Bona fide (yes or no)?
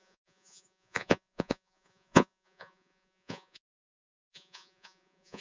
no